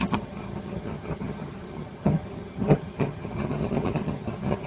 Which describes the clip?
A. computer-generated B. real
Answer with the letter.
A